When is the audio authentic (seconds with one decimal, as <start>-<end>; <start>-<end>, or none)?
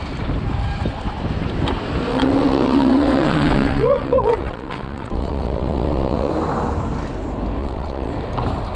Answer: 0.0-2.1; 6.3-7.6; 8.1-8.8